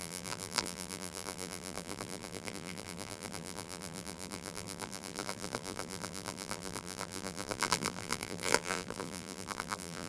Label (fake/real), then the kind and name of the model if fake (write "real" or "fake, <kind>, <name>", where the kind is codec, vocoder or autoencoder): fake, vocoder, BigVGAN v2